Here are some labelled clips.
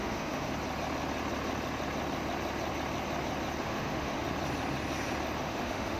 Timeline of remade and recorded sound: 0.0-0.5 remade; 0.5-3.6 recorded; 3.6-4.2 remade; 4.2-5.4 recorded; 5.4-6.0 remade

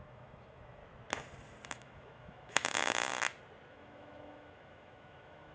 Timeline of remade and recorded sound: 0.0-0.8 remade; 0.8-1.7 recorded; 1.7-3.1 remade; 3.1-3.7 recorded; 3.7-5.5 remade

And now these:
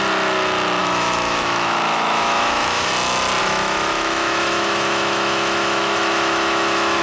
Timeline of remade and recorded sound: 0.0-0.8 recorded; 0.8-2.9 remade; 2.9-3.4 recorded; 3.4-7.0 remade

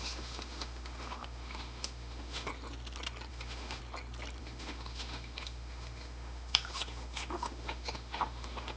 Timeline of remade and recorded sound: 0.0-2.5 remade; 2.5-3.3 recorded; 3.3-3.8 remade; 3.8-4.4 recorded; 4.4-8.8 remade